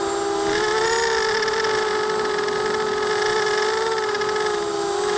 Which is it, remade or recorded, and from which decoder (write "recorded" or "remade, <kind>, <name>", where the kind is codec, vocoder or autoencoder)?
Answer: recorded